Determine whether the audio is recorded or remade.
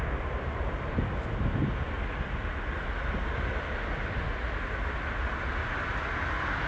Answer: recorded